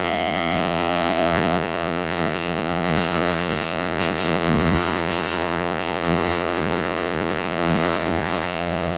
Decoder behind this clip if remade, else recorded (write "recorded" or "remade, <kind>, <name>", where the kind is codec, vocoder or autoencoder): remade, vocoder, Vocos